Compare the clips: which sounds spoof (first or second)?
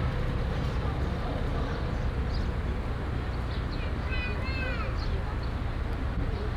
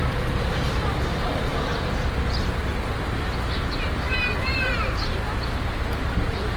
second